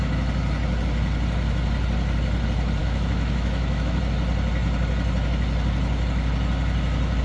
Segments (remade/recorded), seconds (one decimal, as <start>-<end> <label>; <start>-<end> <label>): 0.0-2.8 recorded; 2.8-4.0 remade; 4.0-7.2 recorded